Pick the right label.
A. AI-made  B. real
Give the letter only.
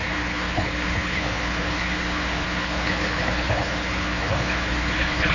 A